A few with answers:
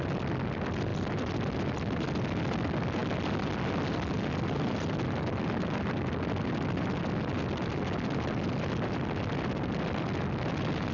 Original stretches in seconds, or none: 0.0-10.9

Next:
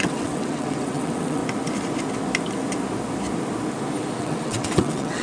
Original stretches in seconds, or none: 1.4-4.2